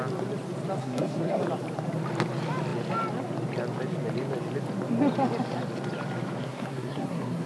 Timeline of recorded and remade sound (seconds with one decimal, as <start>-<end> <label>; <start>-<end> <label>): 0.0-0.8 recorded; 0.8-1.4 remade; 1.4-6.4 recorded; 6.4-7.5 remade